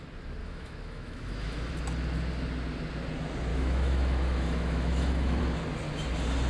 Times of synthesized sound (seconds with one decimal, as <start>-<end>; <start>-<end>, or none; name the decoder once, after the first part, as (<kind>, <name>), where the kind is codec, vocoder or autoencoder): 0.4-1.7 (autoencoder, DAC-VAE); 3.5-5.4